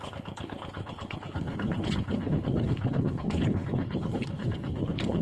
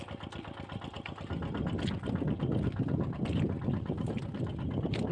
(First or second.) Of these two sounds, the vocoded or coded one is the first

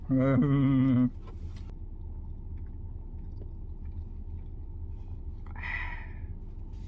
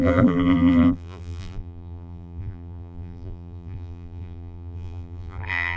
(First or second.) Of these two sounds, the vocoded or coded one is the second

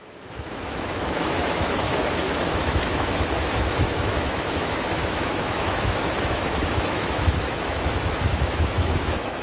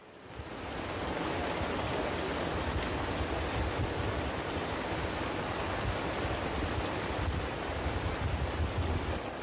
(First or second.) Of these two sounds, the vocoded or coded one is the first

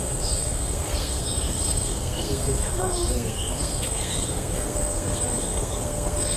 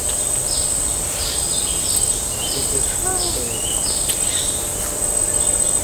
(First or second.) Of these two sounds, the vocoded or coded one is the first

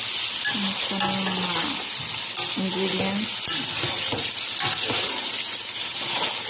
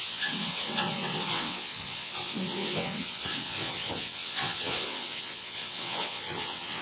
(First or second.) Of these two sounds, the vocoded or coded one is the second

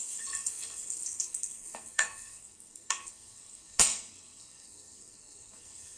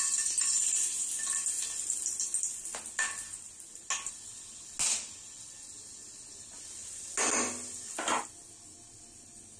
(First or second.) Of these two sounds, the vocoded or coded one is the first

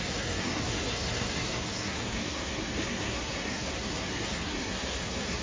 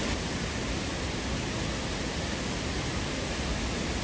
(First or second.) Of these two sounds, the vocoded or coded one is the first